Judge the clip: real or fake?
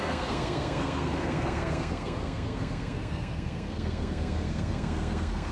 fake